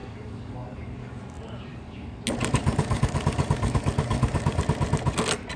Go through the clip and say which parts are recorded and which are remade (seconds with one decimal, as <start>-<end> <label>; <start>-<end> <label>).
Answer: 0.0-1.2 remade; 1.2-1.7 recorded; 1.7-2.2 remade; 2.2-2.6 recorded; 2.6-4.6 remade; 4.6-5.6 recorded

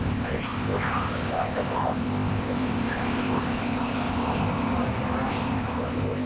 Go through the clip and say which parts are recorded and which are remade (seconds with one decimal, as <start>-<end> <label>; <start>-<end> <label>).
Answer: 0.0-4.7 remade; 4.7-5.3 recorded; 5.3-6.3 remade

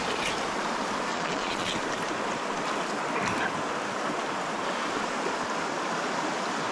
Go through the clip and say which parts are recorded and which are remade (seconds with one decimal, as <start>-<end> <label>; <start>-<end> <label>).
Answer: 0.0-1.1 recorded; 1.1-1.7 remade; 1.7-6.7 recorded

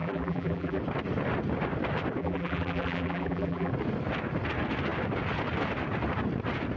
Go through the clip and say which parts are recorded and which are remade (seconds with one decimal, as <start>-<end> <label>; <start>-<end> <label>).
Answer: 0.0-0.8 remade; 0.8-2.2 recorded; 2.2-3.7 remade; 3.7-6.8 recorded

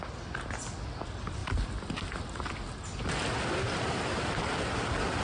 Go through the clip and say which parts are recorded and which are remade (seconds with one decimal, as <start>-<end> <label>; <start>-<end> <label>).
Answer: 0.0-5.2 recorded

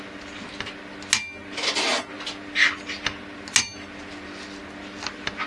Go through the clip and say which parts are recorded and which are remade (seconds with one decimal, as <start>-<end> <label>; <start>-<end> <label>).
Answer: 0.0-5.5 recorded